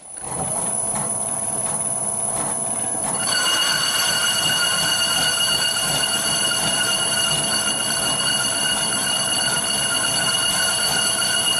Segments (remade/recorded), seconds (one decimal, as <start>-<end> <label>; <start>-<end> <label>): 0.0-11.6 remade

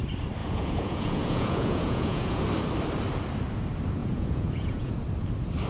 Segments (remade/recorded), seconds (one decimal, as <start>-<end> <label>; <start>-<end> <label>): 0.0-0.4 recorded; 0.4-2.4 remade; 2.4-4.0 recorded; 4.0-5.0 remade; 5.0-5.7 recorded

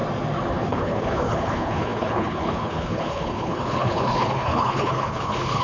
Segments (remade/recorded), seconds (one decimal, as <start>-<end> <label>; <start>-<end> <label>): 0.0-0.5 recorded; 0.5-5.6 remade

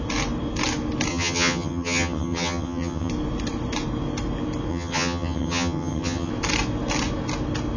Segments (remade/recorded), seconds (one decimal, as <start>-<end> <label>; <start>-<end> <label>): 0.0-1.1 recorded; 1.1-3.1 remade; 3.1-4.7 recorded; 4.7-6.3 remade; 6.3-7.8 recorded

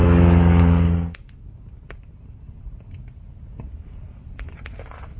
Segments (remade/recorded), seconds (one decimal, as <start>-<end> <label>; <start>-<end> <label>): 0.0-5.2 recorded